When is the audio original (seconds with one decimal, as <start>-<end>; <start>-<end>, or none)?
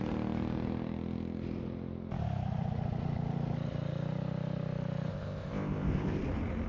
0.0-5.1; 6.2-6.7